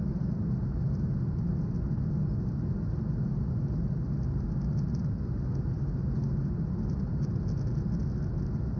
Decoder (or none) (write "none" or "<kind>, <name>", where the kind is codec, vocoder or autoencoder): none